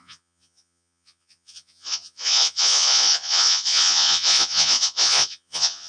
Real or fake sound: fake